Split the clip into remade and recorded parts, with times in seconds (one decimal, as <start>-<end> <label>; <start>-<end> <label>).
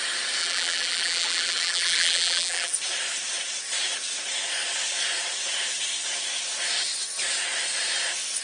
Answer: 0.0-0.4 recorded; 0.4-2.7 remade; 2.7-8.4 recorded